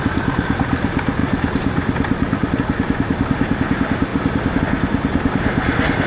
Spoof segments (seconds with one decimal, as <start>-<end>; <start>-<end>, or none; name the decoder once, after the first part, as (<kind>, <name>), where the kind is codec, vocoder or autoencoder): none